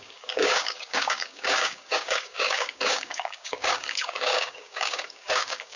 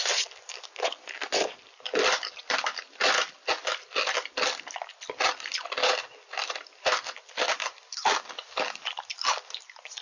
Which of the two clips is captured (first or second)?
second